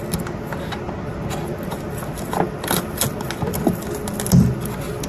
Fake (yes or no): no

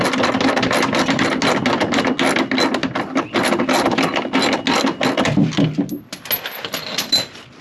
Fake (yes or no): no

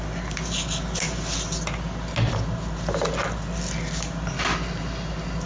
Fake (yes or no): no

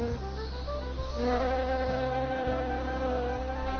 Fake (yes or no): no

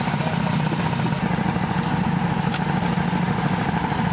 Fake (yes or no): no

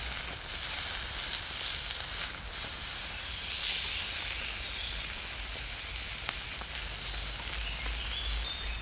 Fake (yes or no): no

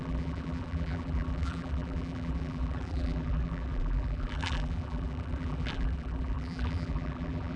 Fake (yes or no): yes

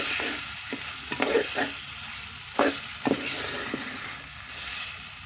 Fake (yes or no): no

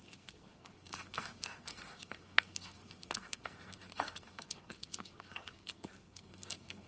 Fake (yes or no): yes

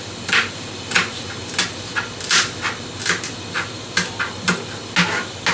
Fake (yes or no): no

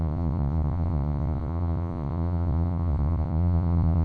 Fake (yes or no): yes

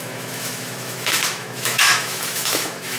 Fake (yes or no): yes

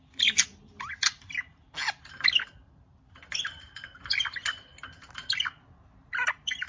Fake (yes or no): no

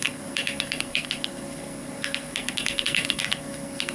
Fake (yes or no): yes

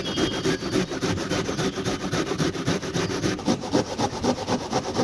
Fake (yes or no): yes